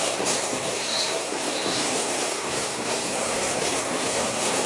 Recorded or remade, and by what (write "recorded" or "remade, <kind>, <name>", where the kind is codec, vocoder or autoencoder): remade, codec, SNAC